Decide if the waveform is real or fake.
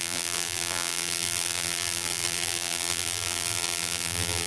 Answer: fake